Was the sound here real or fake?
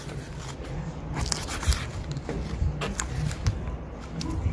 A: real